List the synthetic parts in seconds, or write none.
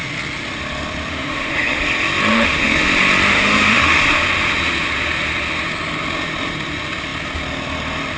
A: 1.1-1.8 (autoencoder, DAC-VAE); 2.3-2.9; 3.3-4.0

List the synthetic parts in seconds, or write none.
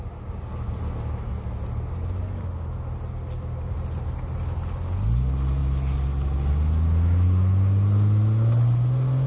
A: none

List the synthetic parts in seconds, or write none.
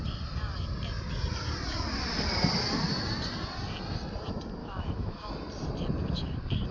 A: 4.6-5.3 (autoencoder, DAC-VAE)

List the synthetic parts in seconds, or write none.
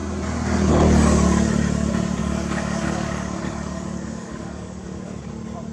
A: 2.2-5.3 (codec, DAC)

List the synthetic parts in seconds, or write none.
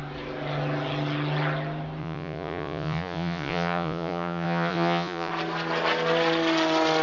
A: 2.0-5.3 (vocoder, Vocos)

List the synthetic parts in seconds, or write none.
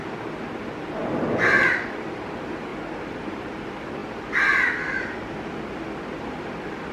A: none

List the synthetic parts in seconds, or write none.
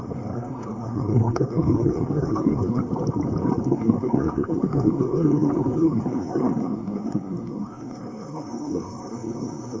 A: 0.0-2.8 (codec, SNAC); 3.6-9.8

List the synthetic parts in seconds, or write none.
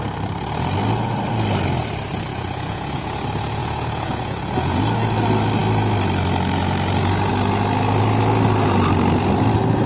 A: 2.3-3.1 (vocoder, Vocos); 3.6-4.8